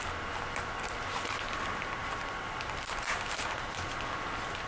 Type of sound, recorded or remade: recorded